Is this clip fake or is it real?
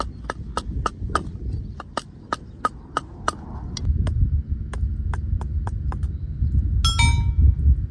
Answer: real